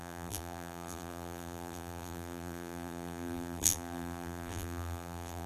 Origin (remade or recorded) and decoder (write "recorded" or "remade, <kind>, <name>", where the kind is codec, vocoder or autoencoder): remade, vocoder, BigVGAN v2